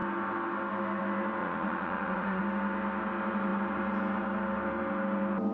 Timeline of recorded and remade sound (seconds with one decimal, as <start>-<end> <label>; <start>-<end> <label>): 0.0-1.4 recorded; 1.4-2.4 remade; 2.4-5.5 recorded